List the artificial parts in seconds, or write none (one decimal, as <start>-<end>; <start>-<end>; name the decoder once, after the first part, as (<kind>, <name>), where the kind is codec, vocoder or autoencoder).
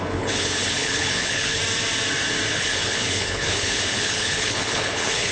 0.0-1.6 (codec, HILCodec); 2.5-5.3